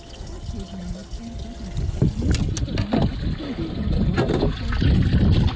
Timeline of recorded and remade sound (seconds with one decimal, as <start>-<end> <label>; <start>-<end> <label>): 0.0-5.6 recorded